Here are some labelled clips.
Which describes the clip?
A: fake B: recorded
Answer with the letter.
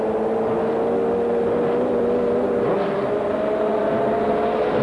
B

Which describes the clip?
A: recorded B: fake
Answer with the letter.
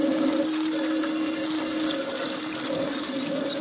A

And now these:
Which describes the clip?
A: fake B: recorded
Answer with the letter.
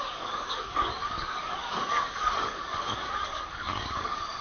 A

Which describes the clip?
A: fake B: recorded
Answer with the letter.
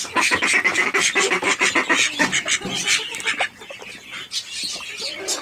B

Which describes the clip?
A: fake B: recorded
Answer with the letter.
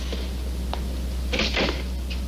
B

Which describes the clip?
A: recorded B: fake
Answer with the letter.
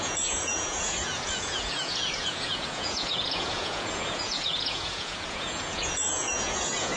B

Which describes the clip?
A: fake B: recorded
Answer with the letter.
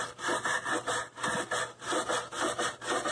B